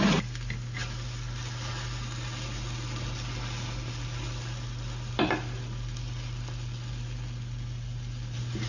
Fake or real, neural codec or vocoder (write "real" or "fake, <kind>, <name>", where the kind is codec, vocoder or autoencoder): real